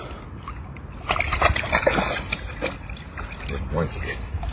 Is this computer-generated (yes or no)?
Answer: no